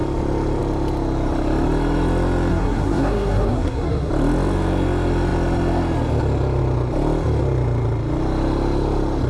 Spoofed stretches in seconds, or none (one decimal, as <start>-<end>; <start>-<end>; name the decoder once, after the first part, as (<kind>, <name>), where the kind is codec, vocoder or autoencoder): 2.5-4.1 (codec, SNAC)